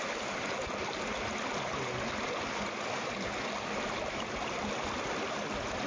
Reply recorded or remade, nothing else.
recorded